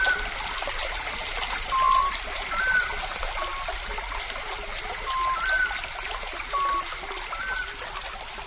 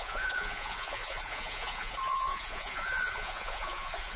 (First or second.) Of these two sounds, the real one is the first